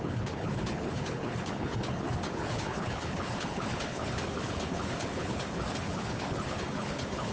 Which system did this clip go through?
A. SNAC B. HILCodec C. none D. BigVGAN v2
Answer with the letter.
B